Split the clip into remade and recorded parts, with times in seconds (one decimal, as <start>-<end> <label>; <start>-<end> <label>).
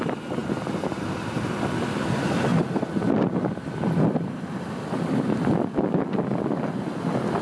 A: 0.0-7.4 recorded